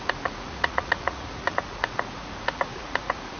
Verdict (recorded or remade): remade